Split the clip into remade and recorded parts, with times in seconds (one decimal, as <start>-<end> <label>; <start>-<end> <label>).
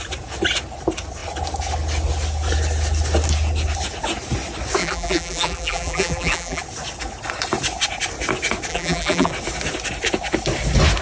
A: 0.0-4.8 recorded; 4.8-6.6 remade; 6.6-8.7 recorded; 8.7-9.3 remade; 9.3-11.0 recorded